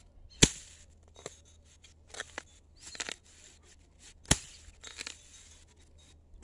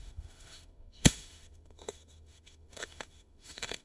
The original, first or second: first